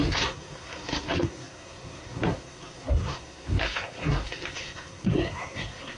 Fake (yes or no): yes